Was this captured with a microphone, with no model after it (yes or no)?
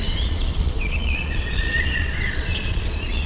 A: no